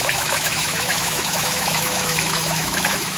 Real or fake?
fake